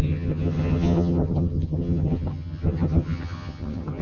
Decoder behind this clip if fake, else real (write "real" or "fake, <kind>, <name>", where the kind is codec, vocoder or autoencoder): fake, vocoder, HiFi-GAN